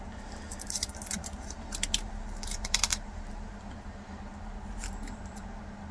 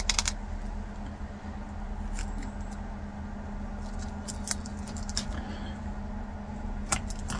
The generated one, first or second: first